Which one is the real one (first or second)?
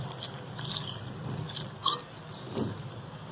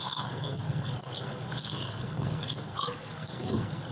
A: first